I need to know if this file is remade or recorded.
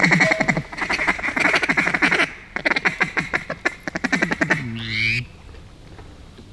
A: recorded